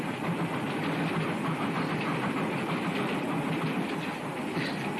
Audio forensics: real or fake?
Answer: real